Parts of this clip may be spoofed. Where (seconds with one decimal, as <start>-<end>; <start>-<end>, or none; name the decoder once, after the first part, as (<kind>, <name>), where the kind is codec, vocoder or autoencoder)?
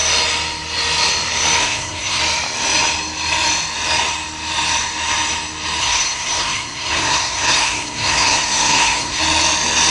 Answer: 1.6-2.2 (codec, SNAC); 5.8-9.2